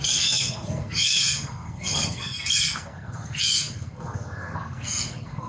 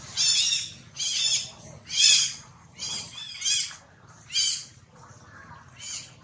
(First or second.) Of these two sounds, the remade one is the first